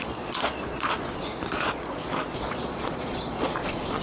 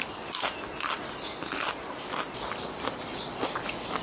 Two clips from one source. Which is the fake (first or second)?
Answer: first